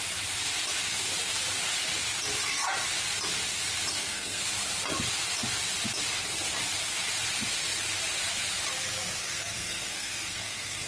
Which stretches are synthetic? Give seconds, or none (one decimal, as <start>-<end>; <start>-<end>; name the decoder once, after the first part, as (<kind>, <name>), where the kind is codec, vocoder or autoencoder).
3.9-4.4 (codec, SNAC); 9.2-10.9